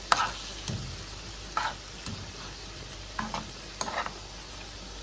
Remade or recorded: recorded